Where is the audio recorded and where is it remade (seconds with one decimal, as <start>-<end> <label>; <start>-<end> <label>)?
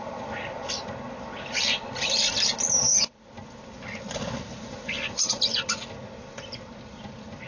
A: 0.0-4.5 recorded; 4.5-5.3 remade; 5.3-7.5 recorded